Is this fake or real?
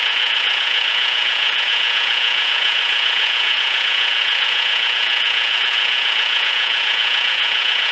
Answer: fake